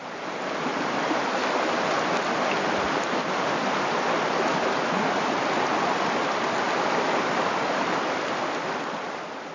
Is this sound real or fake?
real